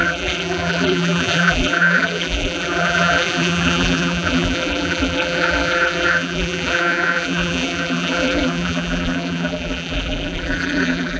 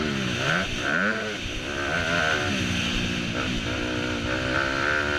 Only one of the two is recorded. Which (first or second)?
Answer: second